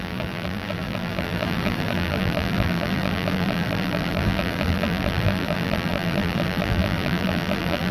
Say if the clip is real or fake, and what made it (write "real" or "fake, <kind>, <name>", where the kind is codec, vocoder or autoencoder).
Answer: fake, vocoder, BigVGAN v2